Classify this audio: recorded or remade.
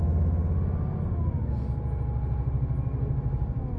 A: recorded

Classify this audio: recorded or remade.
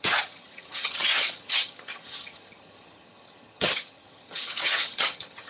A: remade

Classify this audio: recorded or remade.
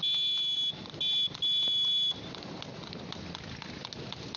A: recorded